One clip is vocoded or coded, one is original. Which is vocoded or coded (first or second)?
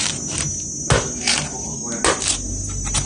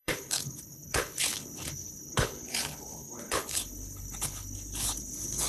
second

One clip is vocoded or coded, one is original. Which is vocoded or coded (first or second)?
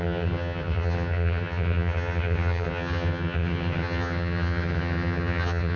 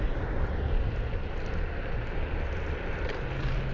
first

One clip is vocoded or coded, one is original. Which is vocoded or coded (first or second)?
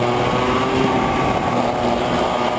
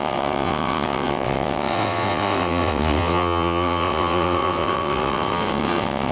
second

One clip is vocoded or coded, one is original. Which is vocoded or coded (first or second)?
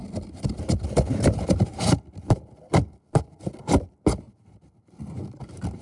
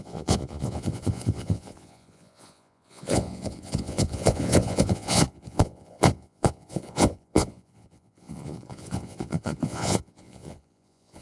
second